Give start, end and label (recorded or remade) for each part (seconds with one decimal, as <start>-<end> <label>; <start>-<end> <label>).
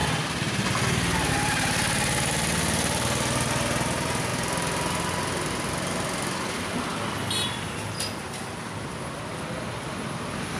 0.0-10.6 recorded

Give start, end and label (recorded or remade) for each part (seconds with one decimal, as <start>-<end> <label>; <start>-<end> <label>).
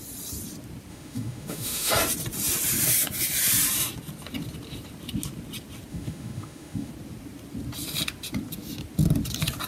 0.0-0.9 recorded; 0.9-1.9 remade; 1.9-5.9 recorded; 5.9-6.9 remade; 6.9-9.7 recorded